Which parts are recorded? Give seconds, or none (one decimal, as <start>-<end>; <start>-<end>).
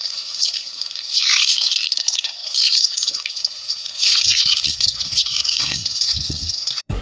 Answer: none